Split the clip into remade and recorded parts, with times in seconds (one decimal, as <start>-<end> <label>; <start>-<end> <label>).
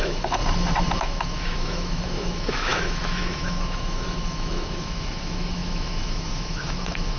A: 0.0-0.4 remade; 0.4-1.0 recorded; 1.0-7.2 remade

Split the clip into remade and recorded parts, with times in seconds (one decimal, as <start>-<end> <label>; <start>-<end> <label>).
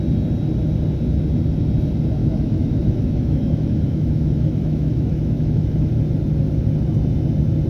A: 0.0-2.2 recorded; 2.2-5.9 remade; 5.9-7.7 recorded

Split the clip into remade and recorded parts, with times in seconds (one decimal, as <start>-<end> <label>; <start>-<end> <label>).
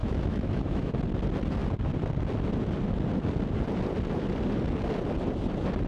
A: 0.0-0.9 remade; 0.9-5.9 recorded